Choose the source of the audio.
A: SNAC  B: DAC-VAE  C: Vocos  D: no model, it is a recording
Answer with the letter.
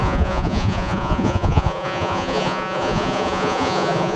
C